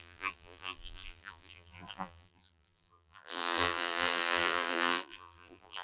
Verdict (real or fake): fake